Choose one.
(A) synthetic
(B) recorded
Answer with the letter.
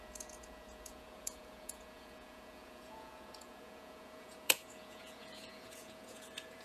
A